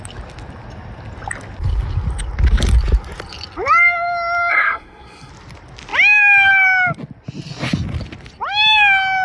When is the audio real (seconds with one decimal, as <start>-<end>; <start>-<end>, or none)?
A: 0.0-4.5; 5.3-9.2